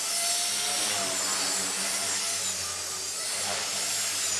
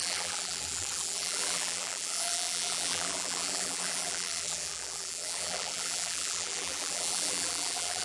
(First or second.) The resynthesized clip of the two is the second